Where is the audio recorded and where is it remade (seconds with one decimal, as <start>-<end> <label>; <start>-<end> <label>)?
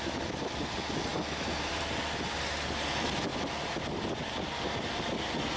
0.0-5.6 recorded